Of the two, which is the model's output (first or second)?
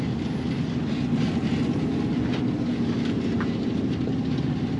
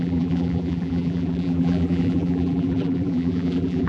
second